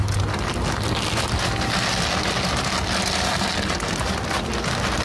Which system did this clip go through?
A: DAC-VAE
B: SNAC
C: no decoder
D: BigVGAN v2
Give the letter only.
C